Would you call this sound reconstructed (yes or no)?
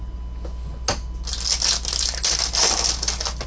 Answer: no